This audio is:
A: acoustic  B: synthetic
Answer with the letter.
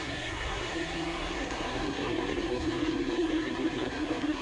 B